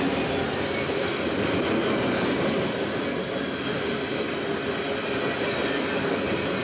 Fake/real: real